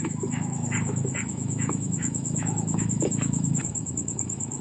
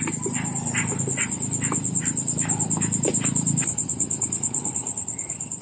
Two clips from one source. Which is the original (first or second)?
second